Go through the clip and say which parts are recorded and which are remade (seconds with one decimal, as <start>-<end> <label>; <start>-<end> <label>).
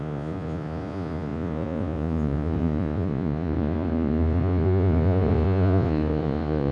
0.0-6.7 remade